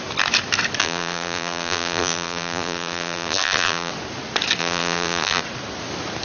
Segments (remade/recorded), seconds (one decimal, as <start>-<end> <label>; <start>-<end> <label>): 0.0-0.8 recorded; 0.8-3.9 remade; 3.9-4.6 recorded; 4.6-5.4 remade; 5.4-6.2 recorded